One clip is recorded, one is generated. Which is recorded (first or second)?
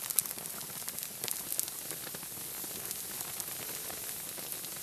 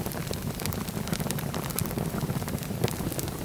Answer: first